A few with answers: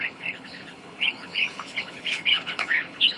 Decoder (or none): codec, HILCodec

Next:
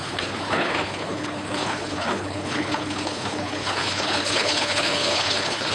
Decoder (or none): codec, HILCodec